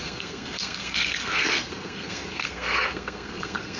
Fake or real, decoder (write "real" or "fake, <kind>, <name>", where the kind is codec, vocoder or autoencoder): fake, codec, SNAC